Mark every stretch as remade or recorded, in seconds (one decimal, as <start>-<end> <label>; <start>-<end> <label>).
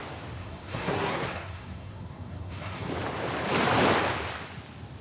0.0-0.4 recorded; 0.4-2.9 remade; 2.9-5.0 recorded